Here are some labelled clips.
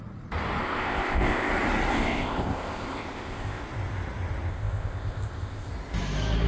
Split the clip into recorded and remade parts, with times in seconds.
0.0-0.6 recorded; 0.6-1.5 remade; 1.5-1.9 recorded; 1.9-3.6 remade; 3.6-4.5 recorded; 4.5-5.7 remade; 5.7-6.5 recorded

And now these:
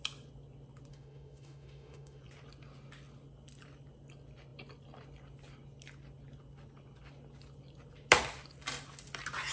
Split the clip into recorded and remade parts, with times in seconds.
0.0-0.9 recorded; 0.9-2.2 remade; 2.2-9.5 recorded

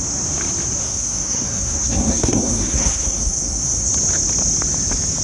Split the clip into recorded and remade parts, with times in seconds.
0.0-0.8 recorded; 0.8-3.9 remade; 3.9-5.2 recorded

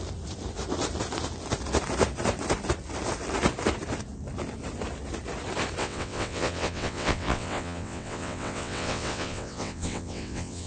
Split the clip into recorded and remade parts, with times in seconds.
0.0-5.8 recorded; 5.8-10.7 remade